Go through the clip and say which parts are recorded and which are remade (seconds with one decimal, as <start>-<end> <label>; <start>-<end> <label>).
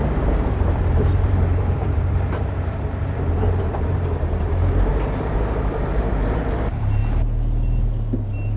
0.0-7.0 remade; 7.0-8.6 recorded